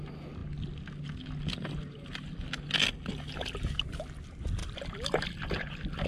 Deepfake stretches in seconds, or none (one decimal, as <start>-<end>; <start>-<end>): 4.6-5.5